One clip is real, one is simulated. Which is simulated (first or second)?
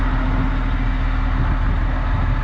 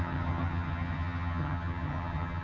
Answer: second